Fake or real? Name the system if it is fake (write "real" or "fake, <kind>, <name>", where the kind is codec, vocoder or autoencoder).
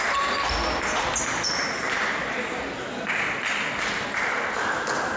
real